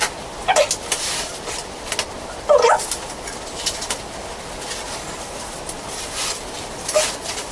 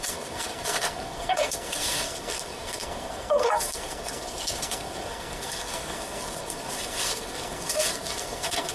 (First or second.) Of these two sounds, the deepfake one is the second